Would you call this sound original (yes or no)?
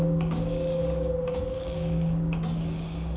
no